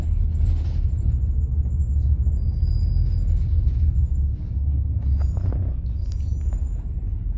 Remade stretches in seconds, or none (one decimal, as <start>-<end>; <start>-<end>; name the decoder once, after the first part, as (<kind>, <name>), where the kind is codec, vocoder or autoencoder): none